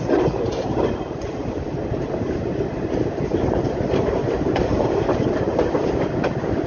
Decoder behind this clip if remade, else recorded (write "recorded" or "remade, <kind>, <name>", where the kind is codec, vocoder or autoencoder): remade, vocoder, BigVGAN v2